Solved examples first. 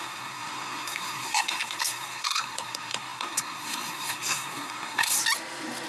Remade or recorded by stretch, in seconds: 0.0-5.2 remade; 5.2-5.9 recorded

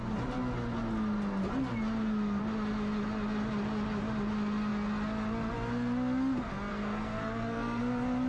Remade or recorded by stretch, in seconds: 0.0-6.7 recorded; 6.7-7.8 remade; 7.8-8.3 recorded

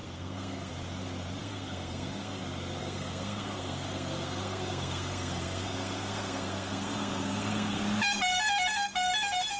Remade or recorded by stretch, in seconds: 0.0-0.7 remade; 0.7-1.4 recorded; 1.4-2.4 remade; 2.4-2.8 recorded; 2.8-7.8 remade; 7.8-9.6 recorded

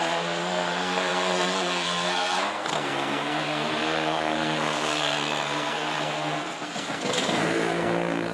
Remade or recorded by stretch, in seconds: 0.0-8.3 remade